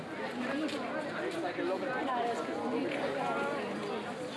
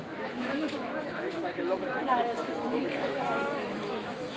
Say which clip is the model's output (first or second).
second